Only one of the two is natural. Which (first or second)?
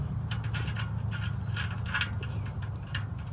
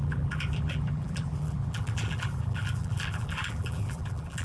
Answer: first